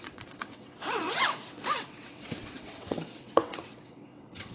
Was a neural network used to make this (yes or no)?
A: yes